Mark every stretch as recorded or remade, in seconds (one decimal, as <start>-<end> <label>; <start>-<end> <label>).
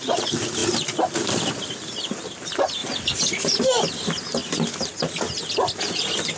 0.0-0.6 recorded; 0.6-1.7 remade; 1.7-6.4 recorded